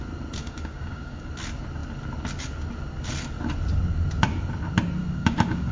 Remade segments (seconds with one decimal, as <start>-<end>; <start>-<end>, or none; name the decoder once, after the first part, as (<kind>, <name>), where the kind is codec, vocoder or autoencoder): 0.4-1.3 (codec, DAC); 5.0-5.7